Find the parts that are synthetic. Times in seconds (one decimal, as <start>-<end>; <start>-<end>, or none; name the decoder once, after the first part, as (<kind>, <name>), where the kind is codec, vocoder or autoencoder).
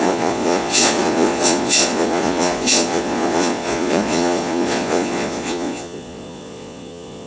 0.0-7.3 (vocoder, Vocos)